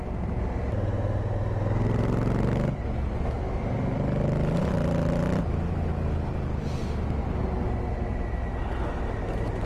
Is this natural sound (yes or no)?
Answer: yes